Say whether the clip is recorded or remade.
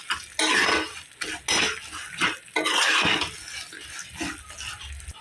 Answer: recorded